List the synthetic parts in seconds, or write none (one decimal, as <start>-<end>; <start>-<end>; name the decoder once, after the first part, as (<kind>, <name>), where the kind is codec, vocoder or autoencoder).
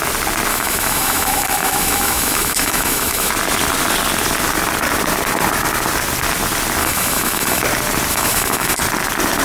0.5-3.3 (autoencoder, DAC-VAE); 6.8-7.6; 8.1-8.8